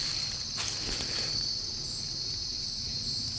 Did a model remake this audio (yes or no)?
yes